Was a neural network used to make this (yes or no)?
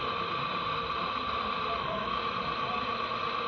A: no